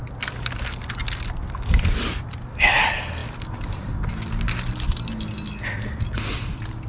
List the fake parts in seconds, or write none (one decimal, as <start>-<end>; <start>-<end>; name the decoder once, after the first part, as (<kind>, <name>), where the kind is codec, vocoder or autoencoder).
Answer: none